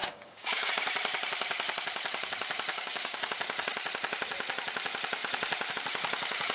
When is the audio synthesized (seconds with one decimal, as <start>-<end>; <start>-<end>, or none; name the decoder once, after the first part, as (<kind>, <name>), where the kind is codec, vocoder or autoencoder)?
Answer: 0.0-0.7 (codec, DAC); 2.7-3.3